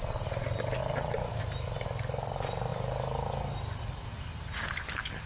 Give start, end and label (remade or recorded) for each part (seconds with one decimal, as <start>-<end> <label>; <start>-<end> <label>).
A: 0.0-0.8 recorded; 0.8-1.4 remade; 1.4-5.3 recorded